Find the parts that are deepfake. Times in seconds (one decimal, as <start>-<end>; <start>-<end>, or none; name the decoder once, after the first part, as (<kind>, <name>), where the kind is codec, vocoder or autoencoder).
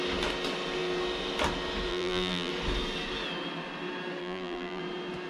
1.9-2.5 (vocoder, BigVGAN v2); 4.2-4.8